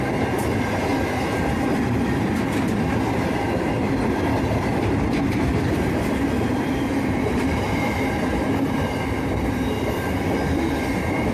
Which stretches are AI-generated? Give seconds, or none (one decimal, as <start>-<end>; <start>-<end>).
0.0-11.3